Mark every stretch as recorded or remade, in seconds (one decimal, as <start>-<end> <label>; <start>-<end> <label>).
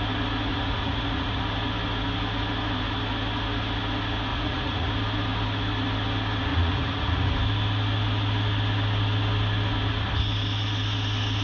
0.0-0.5 recorded; 0.5-1.4 remade; 1.4-4.3 recorded; 4.3-4.9 remade; 4.9-6.5 recorded; 6.5-7.3 remade; 7.3-11.4 recorded